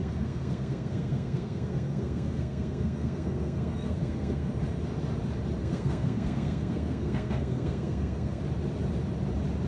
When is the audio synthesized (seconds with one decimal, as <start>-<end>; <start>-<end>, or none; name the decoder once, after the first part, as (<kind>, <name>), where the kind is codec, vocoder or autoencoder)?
0.0-4.5 (codec, SNAC); 5.6-8.4